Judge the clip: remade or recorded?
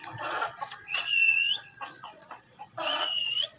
remade